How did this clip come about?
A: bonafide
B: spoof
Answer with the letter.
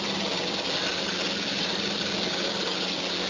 A